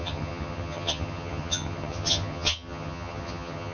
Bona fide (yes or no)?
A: no